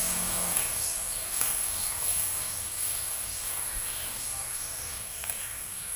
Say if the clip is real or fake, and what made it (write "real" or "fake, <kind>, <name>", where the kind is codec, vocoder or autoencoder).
fake, codec, DAC